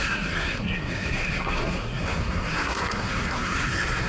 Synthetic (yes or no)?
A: yes